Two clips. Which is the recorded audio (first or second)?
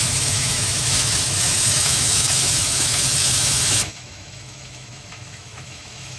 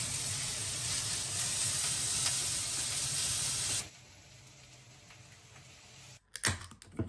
second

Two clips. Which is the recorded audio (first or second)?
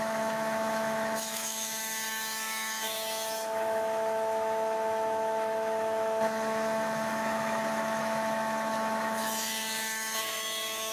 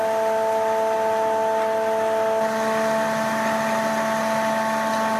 second